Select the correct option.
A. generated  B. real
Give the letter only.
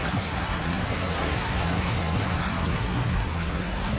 A